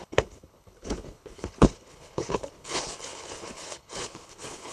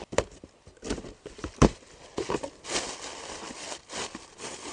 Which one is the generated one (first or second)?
first